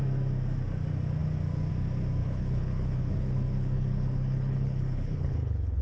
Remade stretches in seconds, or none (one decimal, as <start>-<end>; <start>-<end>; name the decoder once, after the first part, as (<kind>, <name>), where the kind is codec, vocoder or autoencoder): 2.2-5.8 (codec, HILCodec)

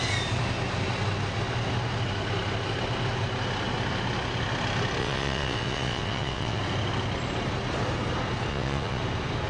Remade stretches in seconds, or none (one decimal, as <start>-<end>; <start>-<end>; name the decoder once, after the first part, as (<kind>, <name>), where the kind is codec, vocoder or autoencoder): 5.0-6.6 (vocoder, WaveNeXt); 8.5-9.0

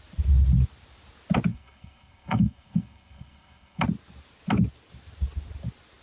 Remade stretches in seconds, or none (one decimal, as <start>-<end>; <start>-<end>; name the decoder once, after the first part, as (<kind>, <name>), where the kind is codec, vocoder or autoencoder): 1.5-3.8 (codec, SNAC)

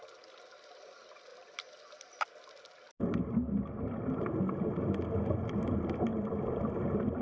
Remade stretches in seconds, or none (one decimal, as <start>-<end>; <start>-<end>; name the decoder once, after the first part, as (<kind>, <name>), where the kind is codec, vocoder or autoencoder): none

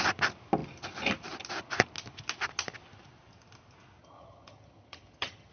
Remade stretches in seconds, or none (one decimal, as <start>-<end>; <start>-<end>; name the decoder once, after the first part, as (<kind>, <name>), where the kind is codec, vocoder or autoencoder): 4.0-5.5 (vocoder, HiFi-GAN)

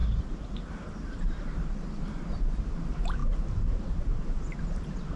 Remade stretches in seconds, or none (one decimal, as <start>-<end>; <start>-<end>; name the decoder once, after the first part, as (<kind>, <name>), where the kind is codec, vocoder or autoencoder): none

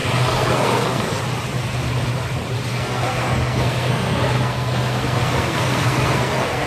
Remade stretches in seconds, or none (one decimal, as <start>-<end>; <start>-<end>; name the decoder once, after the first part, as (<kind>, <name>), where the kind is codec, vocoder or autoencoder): 0.0-1.2 (codec, SNAC); 2.7-6.7

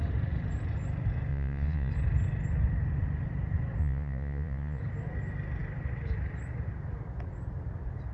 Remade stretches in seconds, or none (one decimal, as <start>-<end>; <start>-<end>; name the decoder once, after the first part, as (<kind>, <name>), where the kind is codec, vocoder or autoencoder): 1.3-1.9 (vocoder, Vocos); 3.8-4.8